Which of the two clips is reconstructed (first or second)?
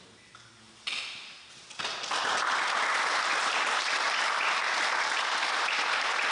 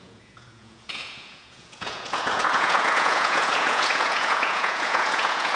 second